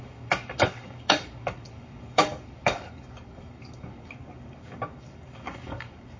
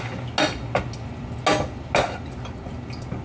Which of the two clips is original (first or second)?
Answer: second